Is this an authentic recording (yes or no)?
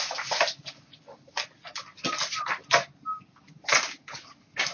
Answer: yes